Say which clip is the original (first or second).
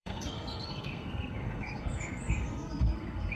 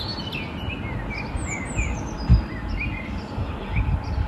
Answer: second